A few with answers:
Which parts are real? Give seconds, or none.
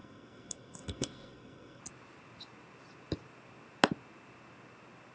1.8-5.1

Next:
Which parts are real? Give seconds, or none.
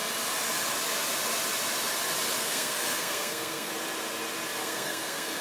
0.0-2.4; 3.7-4.6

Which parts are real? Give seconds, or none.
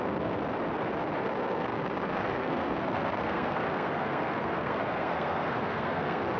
0.4-1.2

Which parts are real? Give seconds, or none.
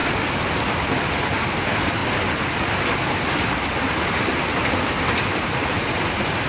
0.0-6.5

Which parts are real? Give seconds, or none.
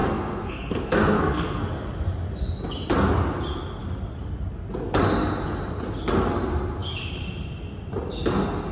1.6-8.7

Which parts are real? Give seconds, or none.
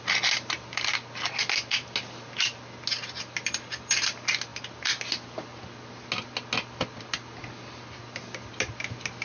0.0-9.2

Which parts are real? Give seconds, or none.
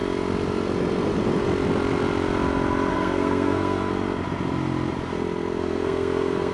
0.0-2.9; 3.9-5.6